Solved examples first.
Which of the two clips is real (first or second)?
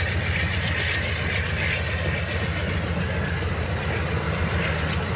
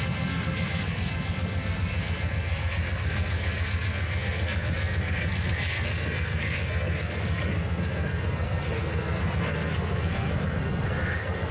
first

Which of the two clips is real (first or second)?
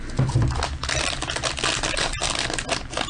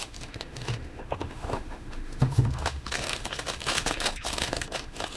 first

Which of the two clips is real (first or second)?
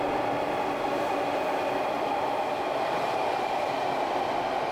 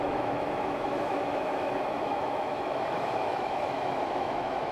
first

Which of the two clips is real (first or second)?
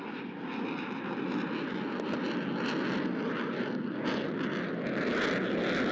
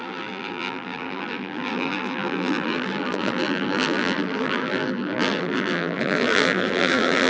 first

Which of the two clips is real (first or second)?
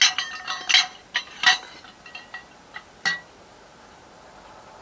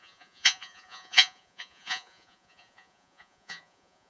first